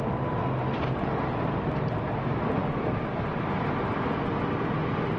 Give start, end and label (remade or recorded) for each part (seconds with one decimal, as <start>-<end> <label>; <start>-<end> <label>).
0.0-2.6 remade; 2.6-5.2 recorded